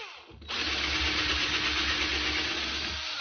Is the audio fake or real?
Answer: real